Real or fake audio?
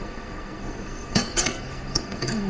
fake